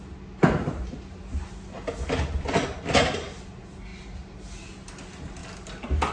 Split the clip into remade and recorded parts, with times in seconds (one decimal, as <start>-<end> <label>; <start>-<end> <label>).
0.0-6.1 recorded